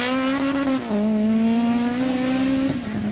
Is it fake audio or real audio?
real